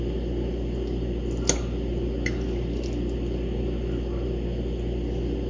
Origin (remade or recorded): recorded